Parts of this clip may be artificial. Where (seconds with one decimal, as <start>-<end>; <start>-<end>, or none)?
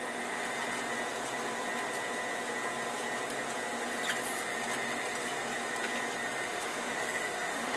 6.5-7.8